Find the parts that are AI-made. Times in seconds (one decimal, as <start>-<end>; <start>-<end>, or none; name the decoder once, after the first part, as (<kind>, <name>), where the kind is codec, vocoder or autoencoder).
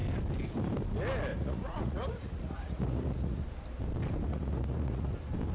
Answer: 1.3-3.4 (vocoder, Vocos); 4.3-5.1